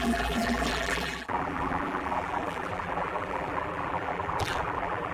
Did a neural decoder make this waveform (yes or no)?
yes